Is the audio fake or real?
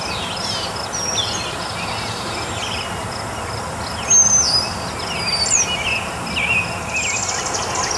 real